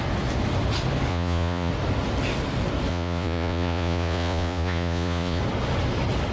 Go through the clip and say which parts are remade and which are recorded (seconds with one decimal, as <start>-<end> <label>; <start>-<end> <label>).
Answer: 0.0-1.1 recorded; 1.1-1.7 remade; 1.7-2.9 recorded; 2.9-5.4 remade; 5.4-6.3 recorded

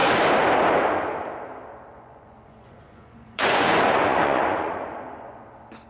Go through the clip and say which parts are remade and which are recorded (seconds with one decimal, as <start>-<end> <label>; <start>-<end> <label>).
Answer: 0.0-1.9 recorded; 1.9-5.4 remade; 5.4-5.9 recorded

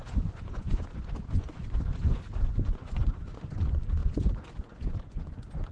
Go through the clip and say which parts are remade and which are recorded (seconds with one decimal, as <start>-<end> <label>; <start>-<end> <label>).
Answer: 0.0-5.7 remade

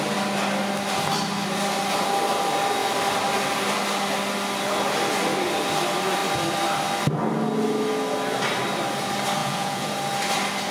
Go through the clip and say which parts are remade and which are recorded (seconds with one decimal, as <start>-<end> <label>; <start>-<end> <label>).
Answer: 0.0-9.4 recorded; 9.4-9.9 remade; 9.9-10.7 recorded

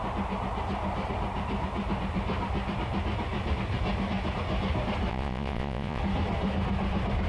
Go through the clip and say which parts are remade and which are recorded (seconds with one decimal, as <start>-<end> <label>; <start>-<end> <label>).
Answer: 0.0-5.1 recorded; 5.1-6.0 remade; 6.0-7.3 recorded